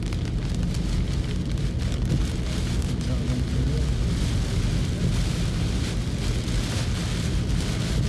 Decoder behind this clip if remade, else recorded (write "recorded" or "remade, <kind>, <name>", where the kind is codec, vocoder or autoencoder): recorded